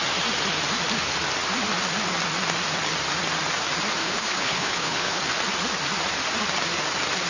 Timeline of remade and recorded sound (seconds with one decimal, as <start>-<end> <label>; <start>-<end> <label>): 0.0-4.0 recorded; 4.0-5.2 remade; 5.2-7.3 recorded